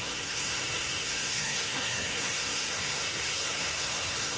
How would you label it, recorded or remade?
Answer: remade